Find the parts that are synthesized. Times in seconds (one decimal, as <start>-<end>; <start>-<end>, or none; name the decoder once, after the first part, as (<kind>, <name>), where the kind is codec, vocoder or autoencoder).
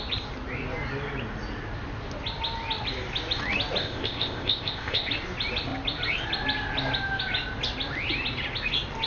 3.8-5.1 (codec, ZipCodec)